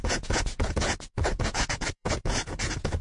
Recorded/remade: remade